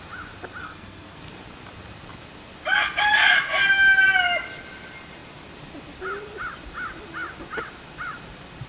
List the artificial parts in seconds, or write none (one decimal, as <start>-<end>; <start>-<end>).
0.6-1.2